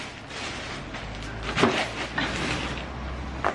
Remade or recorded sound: recorded